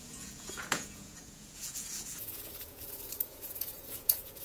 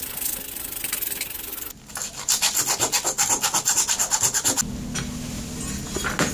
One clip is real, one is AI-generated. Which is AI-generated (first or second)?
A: first